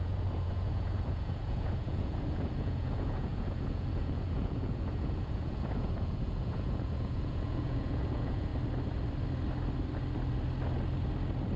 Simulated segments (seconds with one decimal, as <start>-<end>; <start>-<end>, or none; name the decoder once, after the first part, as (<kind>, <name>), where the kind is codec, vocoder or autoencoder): 0.0-8.5 (vocoder, Vocos)